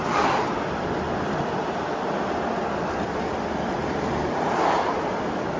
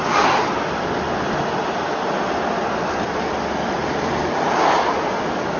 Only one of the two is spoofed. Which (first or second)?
first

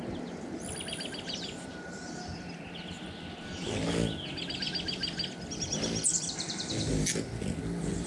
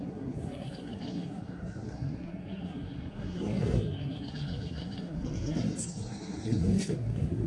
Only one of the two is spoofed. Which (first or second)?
second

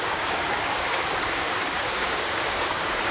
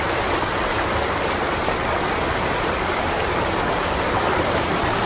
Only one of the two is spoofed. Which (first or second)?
first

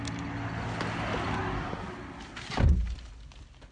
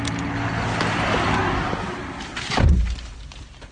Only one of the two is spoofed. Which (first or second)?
second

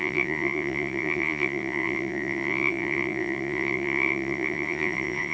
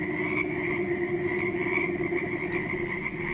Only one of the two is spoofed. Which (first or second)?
first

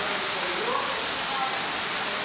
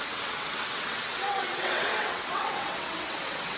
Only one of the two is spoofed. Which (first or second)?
second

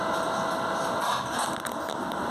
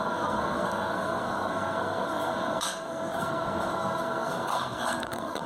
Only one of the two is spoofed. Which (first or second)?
second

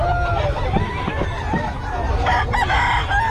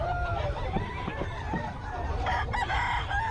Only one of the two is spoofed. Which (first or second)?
second